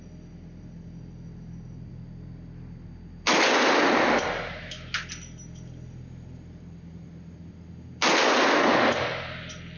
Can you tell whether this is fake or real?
real